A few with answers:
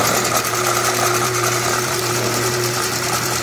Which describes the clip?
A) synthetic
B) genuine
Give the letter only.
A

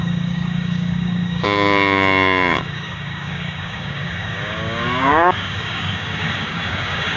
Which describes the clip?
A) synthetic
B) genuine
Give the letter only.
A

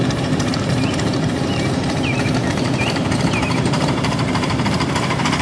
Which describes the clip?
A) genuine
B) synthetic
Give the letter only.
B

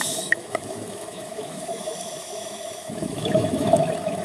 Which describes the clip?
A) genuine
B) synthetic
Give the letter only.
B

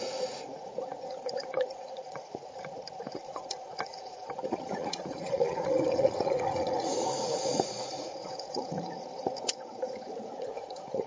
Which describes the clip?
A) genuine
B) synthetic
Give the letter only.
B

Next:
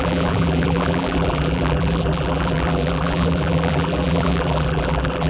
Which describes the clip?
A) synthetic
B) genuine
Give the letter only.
A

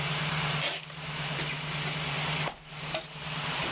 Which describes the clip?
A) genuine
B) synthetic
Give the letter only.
B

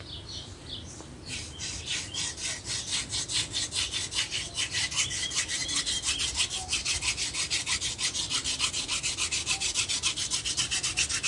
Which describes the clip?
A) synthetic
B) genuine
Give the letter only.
B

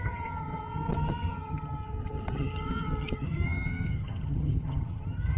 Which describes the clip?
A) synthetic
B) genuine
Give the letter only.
A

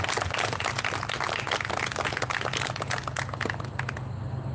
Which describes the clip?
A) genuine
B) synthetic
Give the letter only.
A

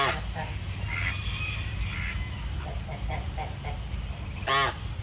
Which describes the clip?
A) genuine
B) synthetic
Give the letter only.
A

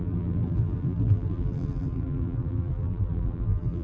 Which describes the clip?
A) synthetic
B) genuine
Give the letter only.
A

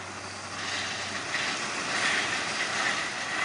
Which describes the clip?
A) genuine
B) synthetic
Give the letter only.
A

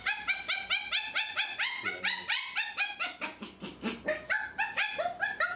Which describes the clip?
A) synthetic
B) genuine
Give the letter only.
B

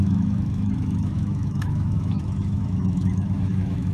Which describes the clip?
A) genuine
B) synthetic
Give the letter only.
B